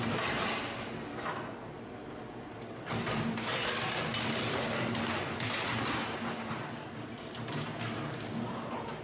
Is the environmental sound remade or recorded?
recorded